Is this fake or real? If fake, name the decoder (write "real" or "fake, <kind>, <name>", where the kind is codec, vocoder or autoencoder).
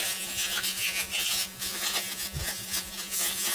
fake, vocoder, Vocos